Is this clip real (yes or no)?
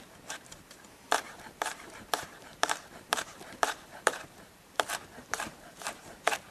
no